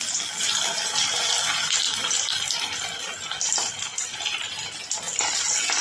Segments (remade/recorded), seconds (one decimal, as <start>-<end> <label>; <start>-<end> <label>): 0.0-5.8 recorded